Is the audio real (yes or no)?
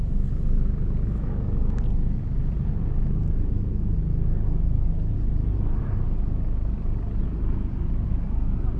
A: yes